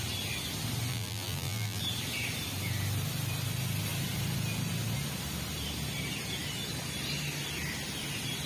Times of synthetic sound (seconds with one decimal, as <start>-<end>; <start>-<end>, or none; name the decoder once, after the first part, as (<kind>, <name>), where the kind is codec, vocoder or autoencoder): 0.9-1.8 (vocoder, BigVGAN v2)